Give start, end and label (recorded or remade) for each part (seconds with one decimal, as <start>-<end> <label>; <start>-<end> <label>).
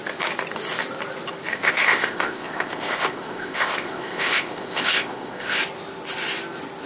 0.0-1.5 recorded; 1.5-5.6 remade; 5.6-6.9 recorded